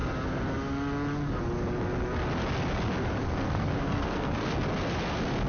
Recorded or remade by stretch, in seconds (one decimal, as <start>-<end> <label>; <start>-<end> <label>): 0.0-3.2 recorded; 3.2-4.6 remade; 4.6-5.5 recorded